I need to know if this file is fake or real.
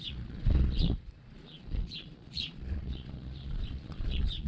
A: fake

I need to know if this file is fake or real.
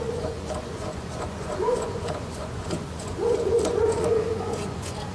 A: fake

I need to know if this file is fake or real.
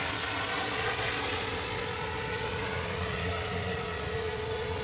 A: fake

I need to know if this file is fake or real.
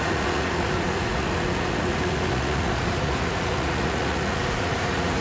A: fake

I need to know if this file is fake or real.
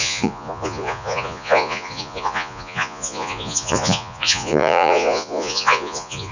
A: fake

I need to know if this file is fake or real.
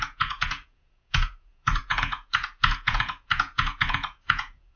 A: fake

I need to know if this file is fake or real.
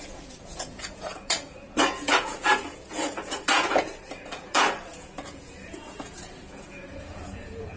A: fake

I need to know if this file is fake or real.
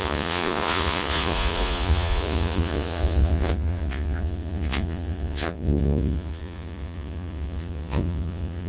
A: fake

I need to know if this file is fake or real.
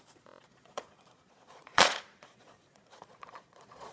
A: fake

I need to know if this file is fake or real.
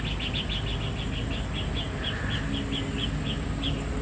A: real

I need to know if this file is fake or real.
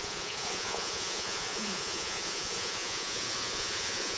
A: fake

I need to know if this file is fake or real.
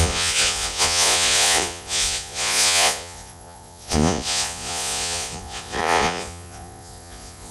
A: fake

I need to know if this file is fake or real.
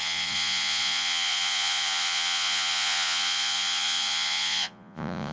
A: fake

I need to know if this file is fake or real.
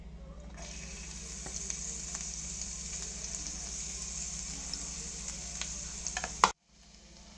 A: real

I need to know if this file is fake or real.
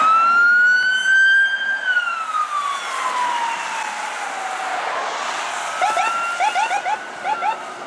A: real